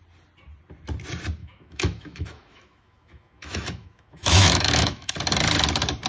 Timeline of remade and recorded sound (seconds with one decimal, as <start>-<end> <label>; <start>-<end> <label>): 0.0-1.4 recorded; 1.4-5.1 remade; 5.1-6.1 recorded